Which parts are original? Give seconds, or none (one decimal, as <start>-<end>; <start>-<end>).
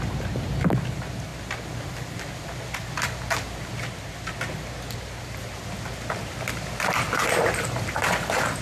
0.0-8.6